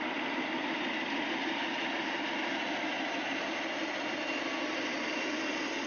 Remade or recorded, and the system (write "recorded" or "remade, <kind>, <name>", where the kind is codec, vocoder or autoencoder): recorded